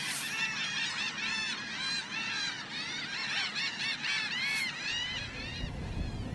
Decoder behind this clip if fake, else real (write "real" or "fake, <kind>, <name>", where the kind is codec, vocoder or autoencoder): fake, vocoder, BigVGAN v2